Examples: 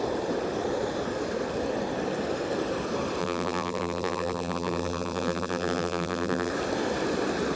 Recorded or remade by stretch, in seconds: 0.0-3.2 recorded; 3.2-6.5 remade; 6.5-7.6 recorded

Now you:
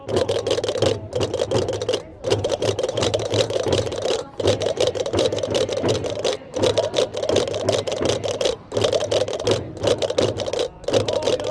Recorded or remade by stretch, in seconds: 0.0-2.1 recorded; 2.1-5.7 remade; 5.7-11.5 recorded